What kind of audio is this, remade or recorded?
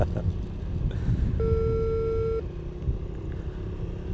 recorded